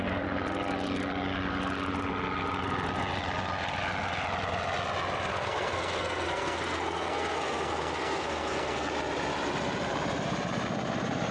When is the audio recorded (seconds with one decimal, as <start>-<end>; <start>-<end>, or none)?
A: 0.0-5.3; 8.9-11.3